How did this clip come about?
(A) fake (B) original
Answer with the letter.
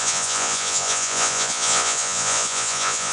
A